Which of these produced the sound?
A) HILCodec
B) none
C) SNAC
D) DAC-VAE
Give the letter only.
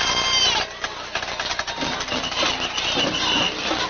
B